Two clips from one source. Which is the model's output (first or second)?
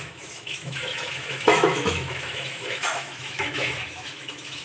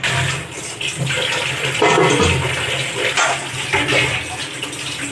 first